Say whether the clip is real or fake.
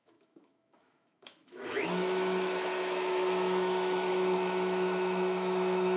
fake